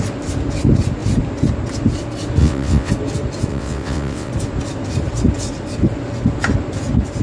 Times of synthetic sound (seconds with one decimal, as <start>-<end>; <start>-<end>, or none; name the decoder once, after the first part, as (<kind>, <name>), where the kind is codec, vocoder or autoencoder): 2.4-2.9 (vocoder, WaveNeXt); 3.5-4.3